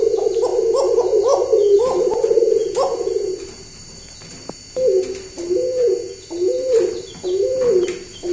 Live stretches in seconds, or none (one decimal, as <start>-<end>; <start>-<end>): 0.0-8.3